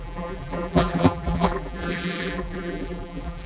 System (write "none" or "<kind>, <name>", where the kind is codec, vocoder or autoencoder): vocoder, BigVGAN v2